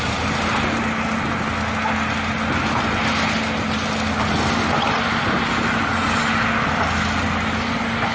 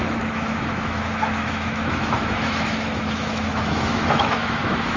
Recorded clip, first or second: first